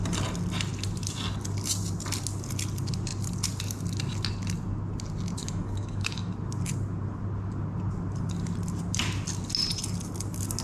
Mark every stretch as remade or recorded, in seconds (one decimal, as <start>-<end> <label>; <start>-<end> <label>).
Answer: 0.0-5.4 recorded; 5.4-6.3 remade; 6.3-10.6 recorded